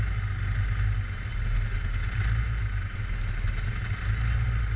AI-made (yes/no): no